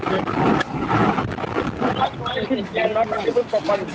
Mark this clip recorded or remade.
recorded